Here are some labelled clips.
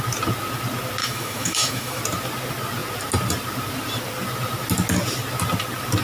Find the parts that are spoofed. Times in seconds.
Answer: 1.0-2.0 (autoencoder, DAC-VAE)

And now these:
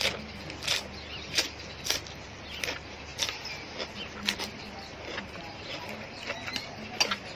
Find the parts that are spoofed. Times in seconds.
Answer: none